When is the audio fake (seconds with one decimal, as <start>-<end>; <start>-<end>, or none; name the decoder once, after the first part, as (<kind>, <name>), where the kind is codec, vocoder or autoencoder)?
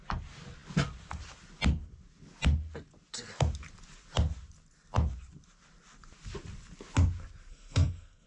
7.5-8.3 (codec, SNAC)